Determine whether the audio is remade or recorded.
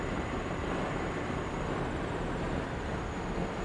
recorded